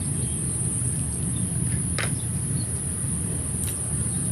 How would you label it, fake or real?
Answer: fake